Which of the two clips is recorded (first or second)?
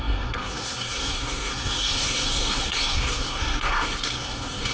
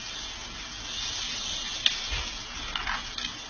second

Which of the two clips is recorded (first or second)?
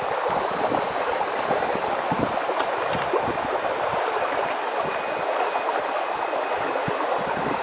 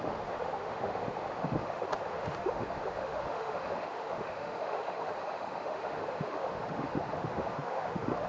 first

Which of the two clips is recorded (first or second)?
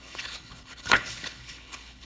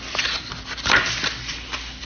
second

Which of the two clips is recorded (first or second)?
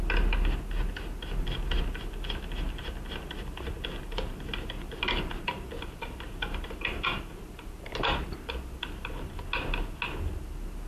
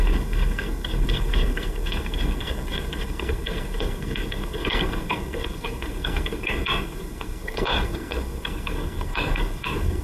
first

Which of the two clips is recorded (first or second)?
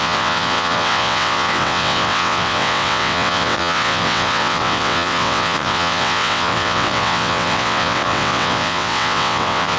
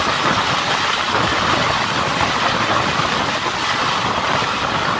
second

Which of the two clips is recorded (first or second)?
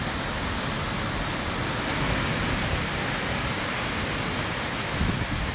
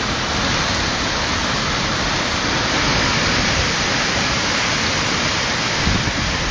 first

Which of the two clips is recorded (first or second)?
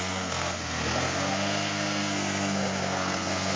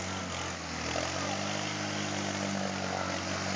second